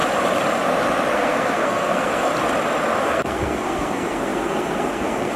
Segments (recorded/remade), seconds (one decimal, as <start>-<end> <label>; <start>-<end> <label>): 0.0-1.1 recorded; 1.1-2.3 remade; 2.3-3.0 recorded; 3.0-5.4 remade